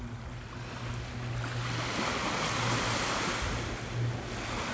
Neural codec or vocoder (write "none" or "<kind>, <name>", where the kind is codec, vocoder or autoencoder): none